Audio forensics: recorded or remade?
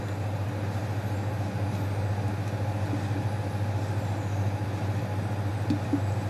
recorded